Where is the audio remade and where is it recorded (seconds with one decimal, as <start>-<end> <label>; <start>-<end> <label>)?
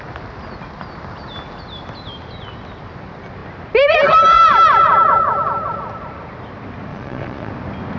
0.0-6.9 recorded; 6.9-7.5 remade; 7.5-8.0 recorded